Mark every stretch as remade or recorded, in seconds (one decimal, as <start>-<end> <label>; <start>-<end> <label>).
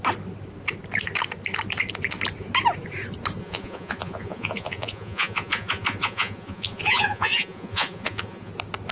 0.0-3.4 recorded; 3.4-8.5 remade; 8.5-8.9 recorded